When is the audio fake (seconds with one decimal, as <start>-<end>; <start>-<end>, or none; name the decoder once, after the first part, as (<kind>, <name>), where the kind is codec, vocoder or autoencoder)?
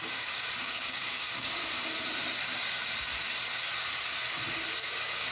0.0-1.6 (codec, DAC); 4.8-5.3